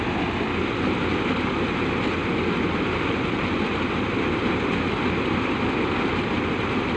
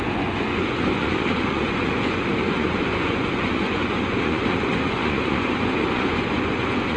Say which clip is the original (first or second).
first